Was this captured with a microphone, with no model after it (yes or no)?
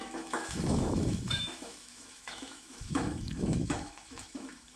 no